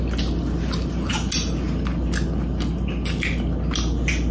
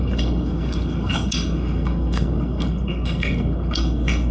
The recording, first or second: first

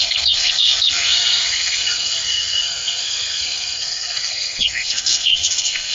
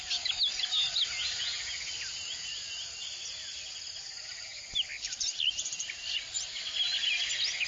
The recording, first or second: second